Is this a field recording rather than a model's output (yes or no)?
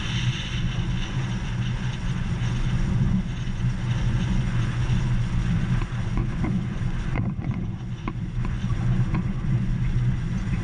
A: no